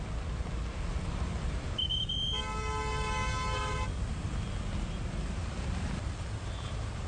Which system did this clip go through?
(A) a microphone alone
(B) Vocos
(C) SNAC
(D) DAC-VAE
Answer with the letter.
A